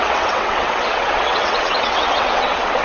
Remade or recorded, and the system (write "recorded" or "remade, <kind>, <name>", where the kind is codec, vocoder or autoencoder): remade, vocoder, WaveNeXt